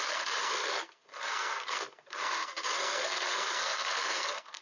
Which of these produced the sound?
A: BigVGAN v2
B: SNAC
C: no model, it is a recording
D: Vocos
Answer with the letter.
B